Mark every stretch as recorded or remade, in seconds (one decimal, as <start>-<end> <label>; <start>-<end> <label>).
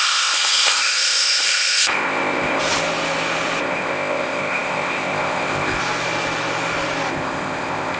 0.0-2.6 remade; 2.6-3.6 recorded; 3.6-5.8 remade; 5.8-7.1 recorded; 7.1-8.0 remade